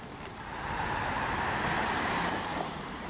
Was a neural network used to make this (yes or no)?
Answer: yes